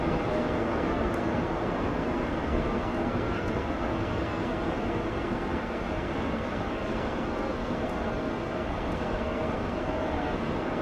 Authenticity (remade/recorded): remade